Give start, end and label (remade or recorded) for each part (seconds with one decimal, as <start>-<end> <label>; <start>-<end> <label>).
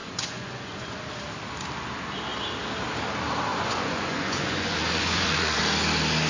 0.0-1.0 remade; 1.0-3.5 recorded; 3.5-5.6 remade; 5.6-6.3 recorded